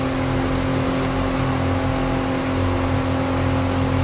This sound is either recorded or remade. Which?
recorded